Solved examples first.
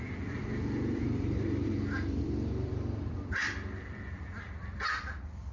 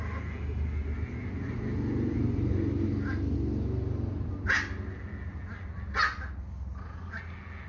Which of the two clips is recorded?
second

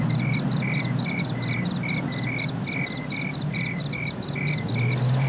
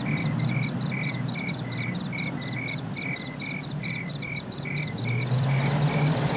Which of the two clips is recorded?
first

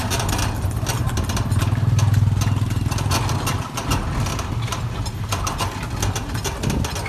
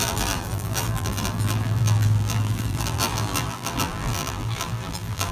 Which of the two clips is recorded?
first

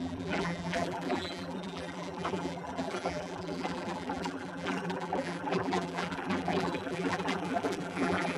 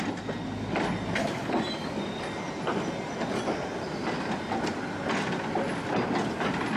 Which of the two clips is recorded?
second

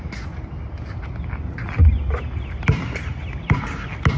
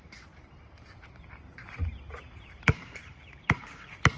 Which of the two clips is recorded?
first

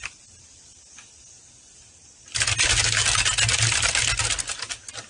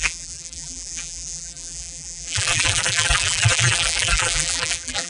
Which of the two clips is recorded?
first